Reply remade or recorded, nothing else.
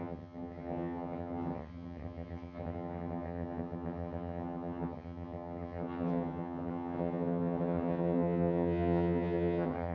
remade